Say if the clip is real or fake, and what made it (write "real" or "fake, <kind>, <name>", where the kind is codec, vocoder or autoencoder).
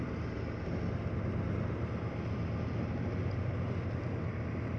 real